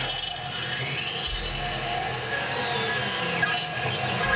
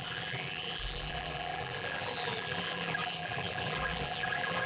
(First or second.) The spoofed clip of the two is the second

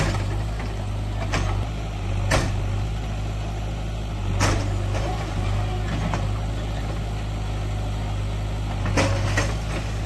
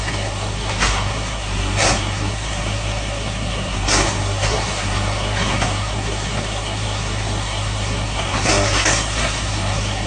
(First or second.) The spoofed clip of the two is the second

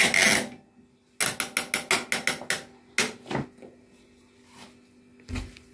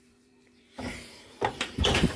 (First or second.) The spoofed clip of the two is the second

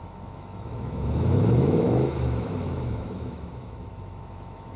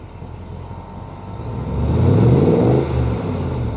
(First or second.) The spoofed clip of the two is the first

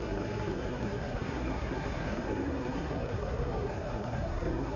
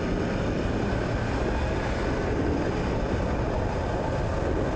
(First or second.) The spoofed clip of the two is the first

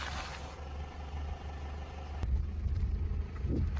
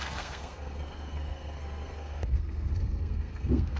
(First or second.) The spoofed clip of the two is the second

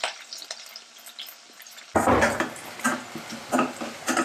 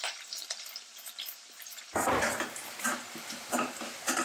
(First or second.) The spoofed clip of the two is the second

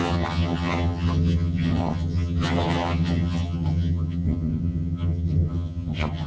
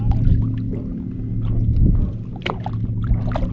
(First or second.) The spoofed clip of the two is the first